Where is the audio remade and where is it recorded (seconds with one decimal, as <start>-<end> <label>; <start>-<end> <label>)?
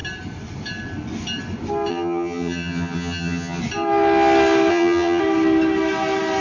0.0-1.9 recorded; 1.9-3.6 remade; 3.6-4.7 recorded; 4.7-5.2 remade; 5.2-6.4 recorded